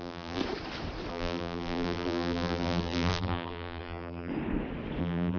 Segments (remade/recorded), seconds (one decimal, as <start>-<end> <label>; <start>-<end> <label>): 0.0-0.4 remade; 0.4-1.1 recorded; 1.1-4.3 remade; 4.3-5.0 recorded; 5.0-5.4 remade